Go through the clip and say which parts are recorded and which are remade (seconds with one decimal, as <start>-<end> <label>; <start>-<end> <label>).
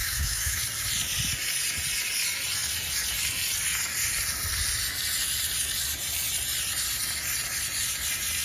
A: 0.0-0.6 remade; 0.6-8.4 recorded